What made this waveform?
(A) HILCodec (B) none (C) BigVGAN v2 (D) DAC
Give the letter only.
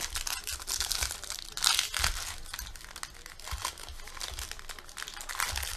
B